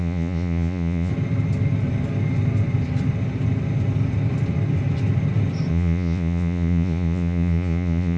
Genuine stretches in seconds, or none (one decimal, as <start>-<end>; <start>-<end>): 1.1-5.7